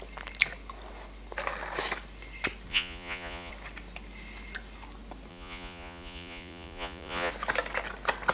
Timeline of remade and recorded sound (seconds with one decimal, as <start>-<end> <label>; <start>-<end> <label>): 0.0-2.7 recorded; 2.7-3.5 remade; 3.5-5.3 recorded; 5.3-7.3 remade; 7.3-8.3 recorded

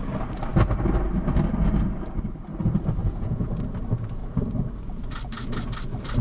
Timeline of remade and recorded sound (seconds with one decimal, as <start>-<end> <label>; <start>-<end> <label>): 0.0-3.0 recorded; 3.0-3.6 remade; 3.6-6.2 recorded

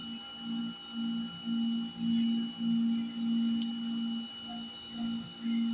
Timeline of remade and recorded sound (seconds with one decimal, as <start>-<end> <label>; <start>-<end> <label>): 0.0-5.7 recorded

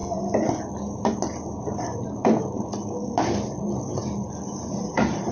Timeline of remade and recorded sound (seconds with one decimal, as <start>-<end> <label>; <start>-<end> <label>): 0.0-1.5 recorded; 1.5-2.2 remade; 2.2-4.4 recorded; 4.4-5.3 remade

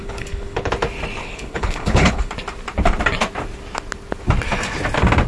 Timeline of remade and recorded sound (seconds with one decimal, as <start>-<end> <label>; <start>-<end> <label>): 0.0-0.7 remade; 0.7-1.2 recorded; 1.2-2.3 remade; 2.3-5.3 recorded

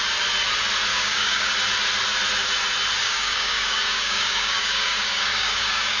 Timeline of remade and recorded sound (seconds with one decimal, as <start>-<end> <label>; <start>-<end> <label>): 0.0-0.9 recorded; 0.9-1.5 remade; 1.5-3.0 recorded; 3.0-6.0 remade